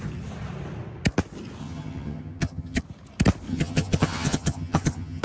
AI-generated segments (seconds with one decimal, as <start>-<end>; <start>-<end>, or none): 1.6-2.8; 3.5-5.2